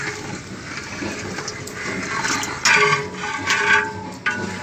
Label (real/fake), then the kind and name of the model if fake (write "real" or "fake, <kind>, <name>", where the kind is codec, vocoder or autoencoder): real